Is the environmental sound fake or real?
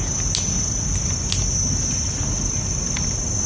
real